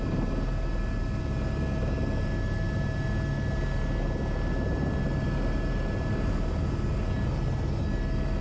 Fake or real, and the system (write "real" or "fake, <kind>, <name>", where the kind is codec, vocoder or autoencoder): real